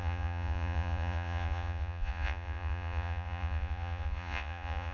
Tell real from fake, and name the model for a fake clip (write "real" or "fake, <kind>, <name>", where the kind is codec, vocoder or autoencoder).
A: fake, vocoder, Vocos